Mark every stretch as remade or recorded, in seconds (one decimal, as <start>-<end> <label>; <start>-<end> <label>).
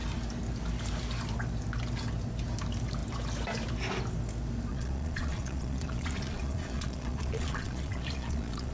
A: 0.0-4.7 recorded; 4.7-8.7 remade